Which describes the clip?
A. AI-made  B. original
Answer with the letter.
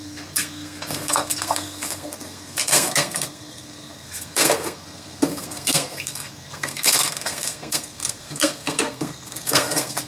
A